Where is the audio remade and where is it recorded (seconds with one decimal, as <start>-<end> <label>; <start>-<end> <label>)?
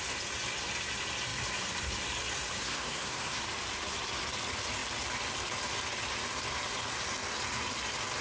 0.0-2.6 recorded; 2.6-3.4 remade; 3.4-8.2 recorded